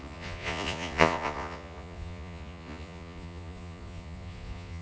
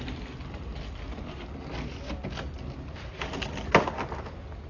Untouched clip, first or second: second